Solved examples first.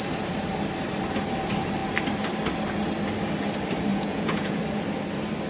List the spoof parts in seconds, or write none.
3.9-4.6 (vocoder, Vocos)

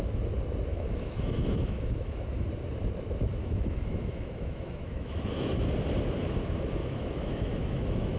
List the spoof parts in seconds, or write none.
0.7-2.5 (autoencoder, DAC-VAE); 3.4-5.7; 6.8-8.2

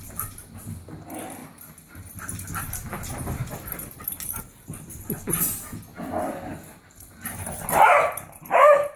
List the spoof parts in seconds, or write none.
none